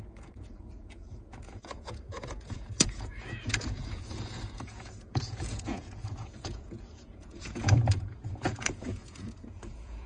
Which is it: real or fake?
fake